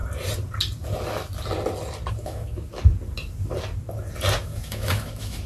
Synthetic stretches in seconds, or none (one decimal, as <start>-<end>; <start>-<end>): 2.1-2.7; 4.4-5.5